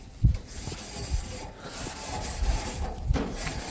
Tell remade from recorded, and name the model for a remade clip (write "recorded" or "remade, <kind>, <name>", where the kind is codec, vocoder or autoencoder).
recorded